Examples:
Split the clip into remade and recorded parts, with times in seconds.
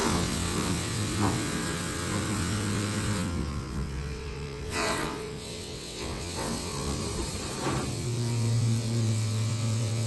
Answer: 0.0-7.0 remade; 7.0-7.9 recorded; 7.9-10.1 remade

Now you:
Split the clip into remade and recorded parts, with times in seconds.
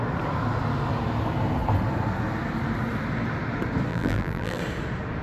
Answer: 0.0-3.9 recorded; 3.9-4.6 remade; 4.6-5.2 recorded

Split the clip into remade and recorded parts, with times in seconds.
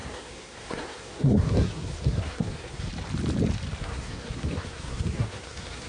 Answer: 0.0-2.9 remade; 2.9-3.8 recorded; 3.8-5.9 remade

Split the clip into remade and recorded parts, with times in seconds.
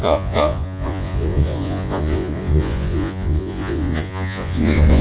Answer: 0.0-5.0 remade